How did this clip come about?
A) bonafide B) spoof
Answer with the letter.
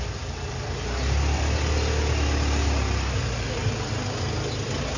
A